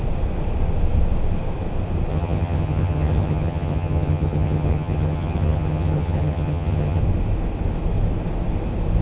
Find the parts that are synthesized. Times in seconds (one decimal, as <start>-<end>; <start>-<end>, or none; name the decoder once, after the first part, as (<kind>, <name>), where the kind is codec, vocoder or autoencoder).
2.1-7.0 (vocoder, HiFi-GAN)